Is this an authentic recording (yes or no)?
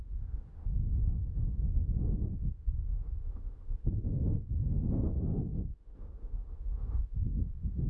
no